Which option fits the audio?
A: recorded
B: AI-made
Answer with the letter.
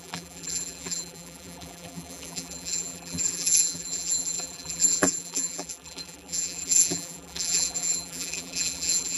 B